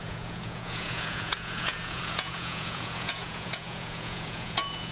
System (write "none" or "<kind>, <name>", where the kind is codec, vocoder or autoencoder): vocoder, Vocos